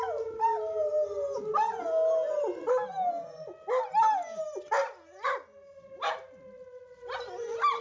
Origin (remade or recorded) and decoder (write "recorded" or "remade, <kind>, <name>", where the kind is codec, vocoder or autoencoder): recorded